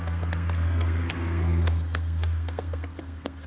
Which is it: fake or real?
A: fake